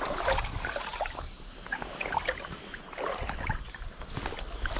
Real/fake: real